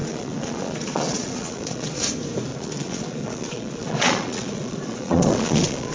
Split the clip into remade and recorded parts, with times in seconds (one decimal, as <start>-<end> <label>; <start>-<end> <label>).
0.0-2.0 remade; 2.0-2.5 recorded; 2.5-5.9 remade